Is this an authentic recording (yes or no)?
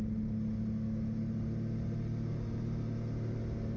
yes